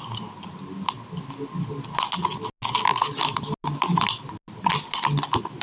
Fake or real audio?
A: real